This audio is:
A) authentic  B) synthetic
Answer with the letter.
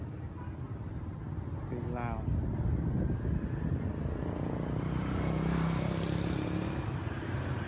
A